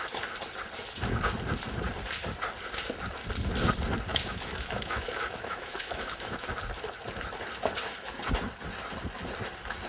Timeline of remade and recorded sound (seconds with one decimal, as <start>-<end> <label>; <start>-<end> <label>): 0.0-4.1 recorded; 4.1-6.5 remade; 6.5-9.9 recorded